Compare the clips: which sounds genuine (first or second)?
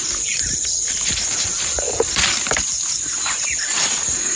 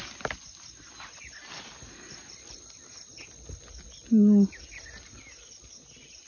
second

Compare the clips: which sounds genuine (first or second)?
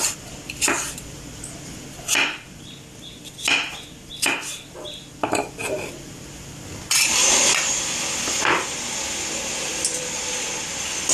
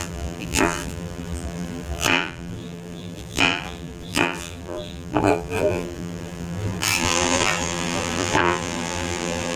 first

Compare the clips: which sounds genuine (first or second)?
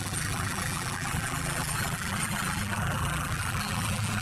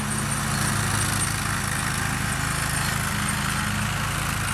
second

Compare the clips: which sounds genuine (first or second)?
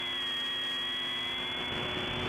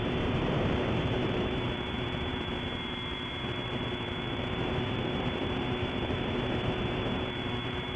first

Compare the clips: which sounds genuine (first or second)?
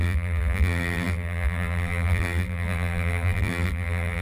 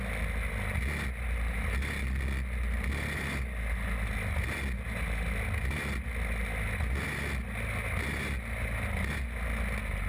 second